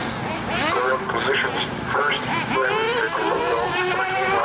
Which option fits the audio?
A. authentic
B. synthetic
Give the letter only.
A